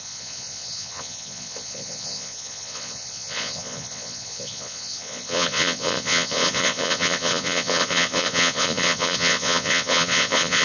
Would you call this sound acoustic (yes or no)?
no